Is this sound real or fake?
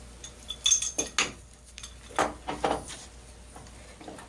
real